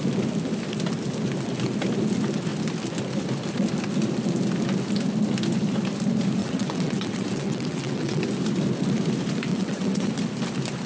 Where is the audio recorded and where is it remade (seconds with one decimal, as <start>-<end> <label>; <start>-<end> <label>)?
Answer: 0.0-6.4 recorded; 6.4-8.2 remade; 8.2-9.5 recorded; 9.5-10.1 remade; 10.1-10.9 recorded